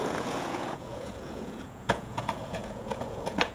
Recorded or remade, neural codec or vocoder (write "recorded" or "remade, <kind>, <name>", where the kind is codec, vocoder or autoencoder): remade, vocoder, Vocos